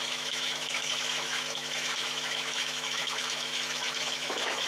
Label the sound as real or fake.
fake